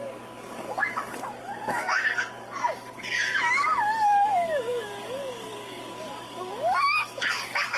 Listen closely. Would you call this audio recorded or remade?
remade